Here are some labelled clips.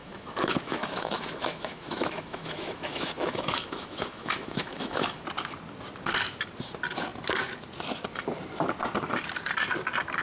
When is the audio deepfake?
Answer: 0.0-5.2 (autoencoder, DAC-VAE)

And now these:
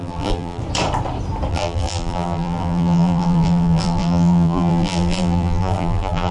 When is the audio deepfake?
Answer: 0.0-0.6 (vocoder, BigVGAN v2); 1.5-6.3

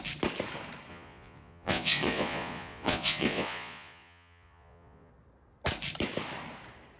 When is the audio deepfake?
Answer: 0.9-5.1 (vocoder, Vocos)

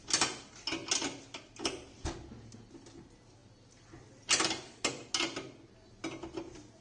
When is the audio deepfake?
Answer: none

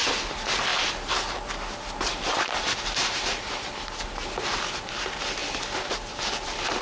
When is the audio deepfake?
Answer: 0.7-3.4 (vocoder, BigVGAN v2)

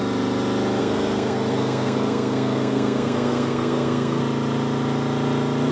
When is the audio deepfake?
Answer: 0.8-4.2 (codec, SNAC)

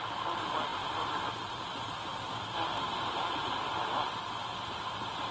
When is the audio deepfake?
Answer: 2.1-4.8 (vocoder, BigVGAN v2)

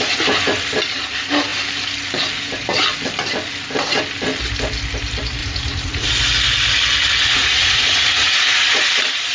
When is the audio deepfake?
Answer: 5.4-6.1 (vocoder, Vocos); 7.3-8.9